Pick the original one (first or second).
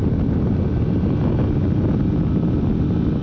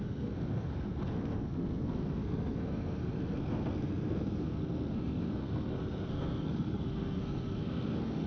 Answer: first